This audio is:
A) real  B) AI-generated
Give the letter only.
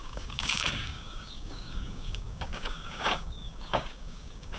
B